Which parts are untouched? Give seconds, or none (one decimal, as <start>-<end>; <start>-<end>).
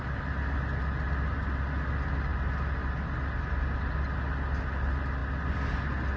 0.0-6.2